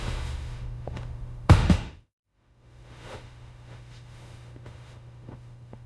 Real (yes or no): no